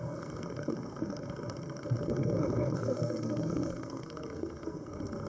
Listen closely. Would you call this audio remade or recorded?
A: remade